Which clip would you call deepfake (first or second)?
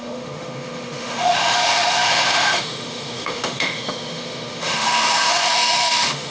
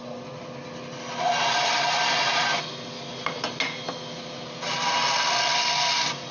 first